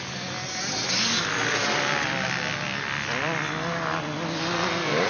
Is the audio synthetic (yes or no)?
no